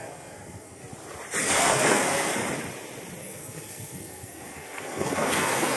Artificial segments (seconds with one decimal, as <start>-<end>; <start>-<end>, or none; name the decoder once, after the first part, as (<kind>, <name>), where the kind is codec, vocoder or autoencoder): 0.0-0.8 (codec, SNAC); 1.4-2.4; 3.2-5.8